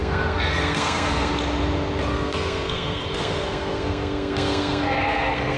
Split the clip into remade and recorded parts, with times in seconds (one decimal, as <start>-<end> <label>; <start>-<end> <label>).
0.0-1.3 remade; 1.3-2.1 recorded; 2.1-5.6 remade